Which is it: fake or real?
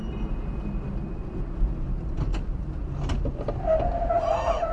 real